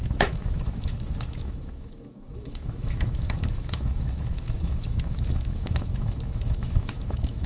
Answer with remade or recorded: remade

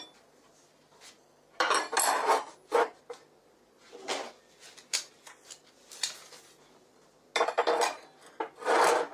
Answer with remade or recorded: recorded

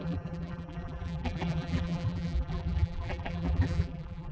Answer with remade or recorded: remade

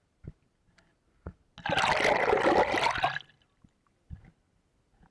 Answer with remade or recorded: recorded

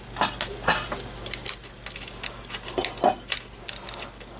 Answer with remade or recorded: recorded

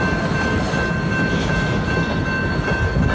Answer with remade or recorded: recorded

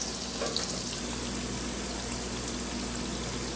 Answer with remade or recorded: recorded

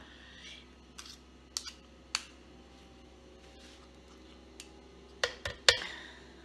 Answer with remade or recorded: recorded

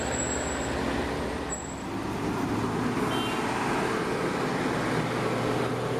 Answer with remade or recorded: recorded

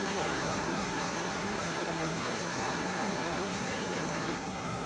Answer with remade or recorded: remade